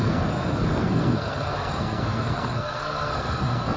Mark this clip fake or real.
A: fake